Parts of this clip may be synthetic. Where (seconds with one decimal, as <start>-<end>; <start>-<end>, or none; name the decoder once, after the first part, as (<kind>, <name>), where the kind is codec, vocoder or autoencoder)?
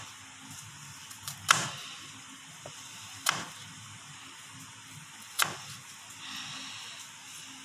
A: 1.0-4.2 (vocoder, BigVGAN v2)